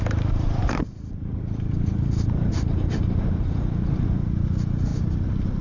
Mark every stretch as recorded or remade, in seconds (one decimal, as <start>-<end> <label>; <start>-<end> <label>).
0.0-4.9 remade; 4.9-5.6 recorded